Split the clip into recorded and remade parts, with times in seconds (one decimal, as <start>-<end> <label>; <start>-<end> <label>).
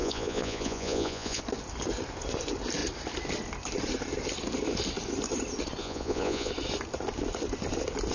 0.0-1.4 remade; 1.4-5.8 recorded; 5.8-6.5 remade; 6.5-8.1 recorded